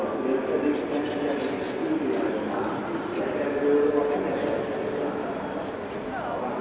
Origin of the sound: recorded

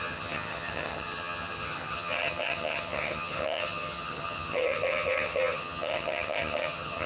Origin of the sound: remade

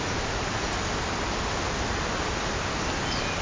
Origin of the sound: recorded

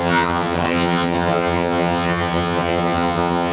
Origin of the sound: remade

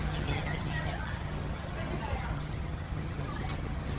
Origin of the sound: remade